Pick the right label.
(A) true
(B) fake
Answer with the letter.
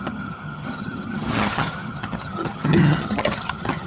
B